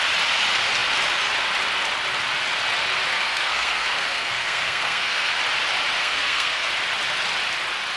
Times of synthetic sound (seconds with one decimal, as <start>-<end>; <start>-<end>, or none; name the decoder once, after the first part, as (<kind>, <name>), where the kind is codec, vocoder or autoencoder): 3.1-5.3 (codec, SNAC); 6.0-6.7